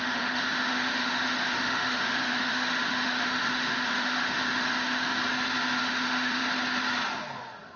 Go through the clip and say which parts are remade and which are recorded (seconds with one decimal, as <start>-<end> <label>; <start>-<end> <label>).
0.0-5.1 remade; 5.1-5.8 recorded; 5.8-6.4 remade; 6.4-7.8 recorded

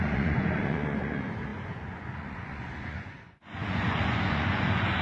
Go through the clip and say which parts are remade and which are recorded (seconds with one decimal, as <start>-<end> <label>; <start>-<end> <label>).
0.0-5.0 remade

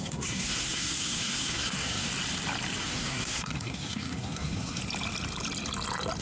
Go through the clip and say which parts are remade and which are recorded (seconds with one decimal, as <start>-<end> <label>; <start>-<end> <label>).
0.0-2.1 remade; 2.1-2.8 recorded; 2.8-4.8 remade; 4.8-6.2 recorded

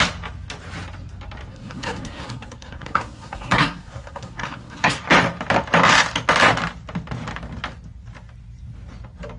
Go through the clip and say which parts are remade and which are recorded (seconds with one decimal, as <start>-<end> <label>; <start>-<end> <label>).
0.0-1.5 recorded; 1.5-5.0 remade; 5.0-9.4 recorded

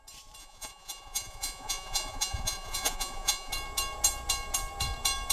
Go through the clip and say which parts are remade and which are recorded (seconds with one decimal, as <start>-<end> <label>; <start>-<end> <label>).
0.0-0.4 recorded; 0.4-3.5 remade; 3.5-5.3 recorded

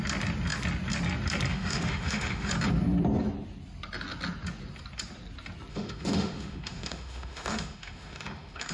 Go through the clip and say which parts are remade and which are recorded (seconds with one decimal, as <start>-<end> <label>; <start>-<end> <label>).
0.0-1.5 recorded; 1.5-2.5 remade; 2.5-5.7 recorded; 5.7-8.7 remade

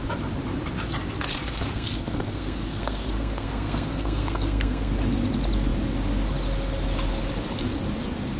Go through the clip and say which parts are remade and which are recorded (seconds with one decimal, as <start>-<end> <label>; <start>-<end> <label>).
0.0-1.3 recorded; 1.3-4.9 remade; 4.9-8.4 recorded